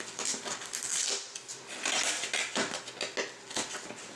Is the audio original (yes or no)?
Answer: yes